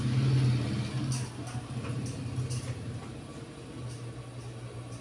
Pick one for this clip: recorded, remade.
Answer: recorded